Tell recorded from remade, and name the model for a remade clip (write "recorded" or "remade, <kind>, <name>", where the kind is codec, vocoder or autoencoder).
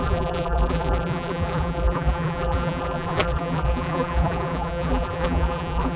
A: remade, vocoder, BigVGAN v2